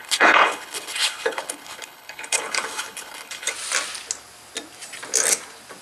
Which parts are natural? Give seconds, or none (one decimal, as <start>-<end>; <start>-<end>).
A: 3.5-5.8